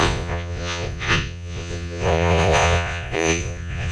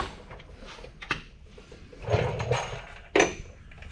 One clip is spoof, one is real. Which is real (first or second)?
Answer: second